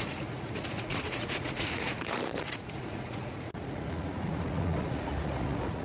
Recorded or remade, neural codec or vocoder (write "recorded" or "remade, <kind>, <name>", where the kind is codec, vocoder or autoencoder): remade, vocoder, Vocos